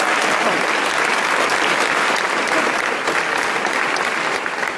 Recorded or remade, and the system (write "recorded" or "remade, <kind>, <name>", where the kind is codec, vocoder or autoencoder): recorded